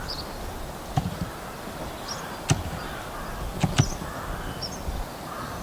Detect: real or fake fake